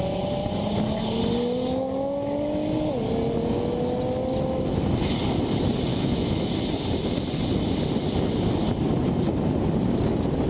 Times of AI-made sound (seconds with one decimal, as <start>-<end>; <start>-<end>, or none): 5.9-6.5